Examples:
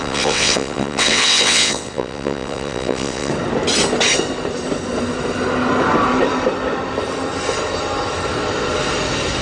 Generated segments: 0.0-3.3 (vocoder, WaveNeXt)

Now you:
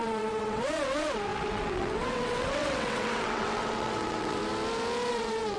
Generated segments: 0.0-4.4 (vocoder, WaveNeXt); 5.1-5.6

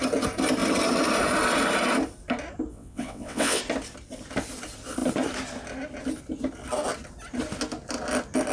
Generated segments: 2.7-3.6 (vocoder, WaveNeXt)

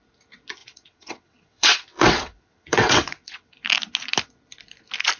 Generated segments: 0.6-3.5 (vocoder, WaveNeXt)